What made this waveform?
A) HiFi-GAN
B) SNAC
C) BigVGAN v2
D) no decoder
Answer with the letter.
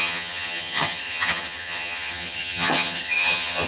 A